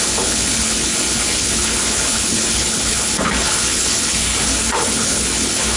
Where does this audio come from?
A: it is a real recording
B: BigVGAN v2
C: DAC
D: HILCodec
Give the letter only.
D